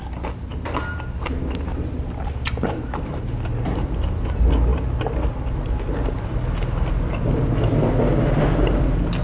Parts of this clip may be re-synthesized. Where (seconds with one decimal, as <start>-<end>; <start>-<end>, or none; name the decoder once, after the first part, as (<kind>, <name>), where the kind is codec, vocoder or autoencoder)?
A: none